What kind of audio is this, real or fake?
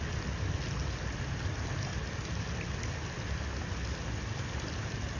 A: real